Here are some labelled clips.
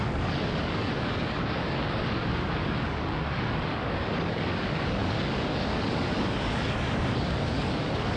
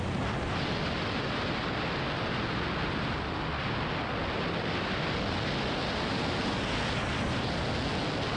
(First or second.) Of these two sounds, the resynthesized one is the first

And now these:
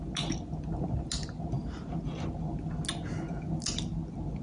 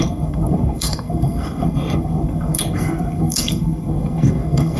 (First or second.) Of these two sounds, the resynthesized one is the second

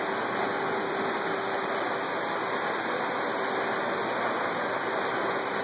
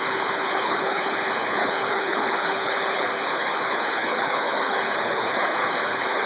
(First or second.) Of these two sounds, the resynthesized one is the second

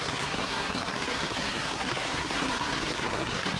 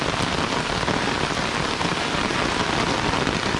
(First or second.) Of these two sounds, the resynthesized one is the first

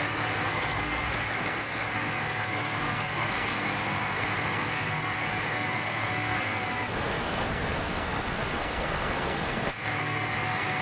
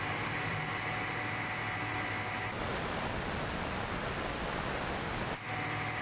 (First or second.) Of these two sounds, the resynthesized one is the first